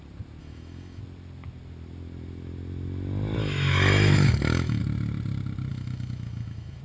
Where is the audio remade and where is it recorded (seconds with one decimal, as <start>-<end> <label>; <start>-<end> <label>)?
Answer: 0.0-0.4 recorded; 0.4-1.0 remade; 1.0-3.4 recorded; 3.4-4.8 remade; 4.8-5.7 recorded; 5.7-6.8 remade

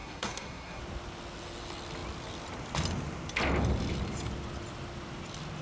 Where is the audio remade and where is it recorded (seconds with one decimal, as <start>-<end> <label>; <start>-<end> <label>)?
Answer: 0.0-0.8 remade; 0.8-5.6 recorded

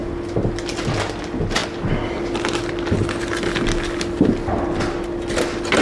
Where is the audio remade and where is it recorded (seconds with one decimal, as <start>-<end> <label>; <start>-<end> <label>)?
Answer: 0.0-5.8 recorded

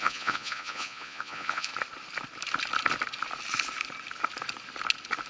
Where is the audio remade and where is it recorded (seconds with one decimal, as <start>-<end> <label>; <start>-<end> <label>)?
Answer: 0.0-1.7 remade; 1.7-5.3 recorded